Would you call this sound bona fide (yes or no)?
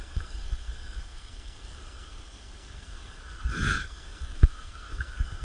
no